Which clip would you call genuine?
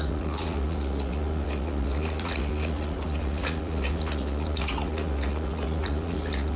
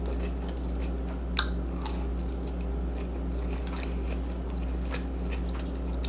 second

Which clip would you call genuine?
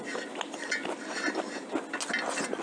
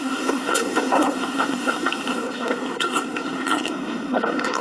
first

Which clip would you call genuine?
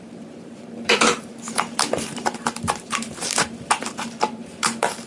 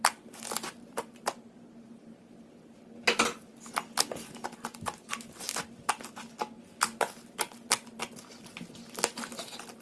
second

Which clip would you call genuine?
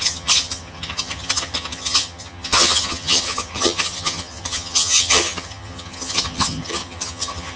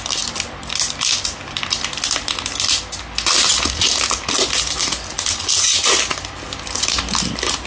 second